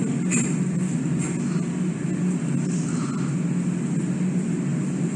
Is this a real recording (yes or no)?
yes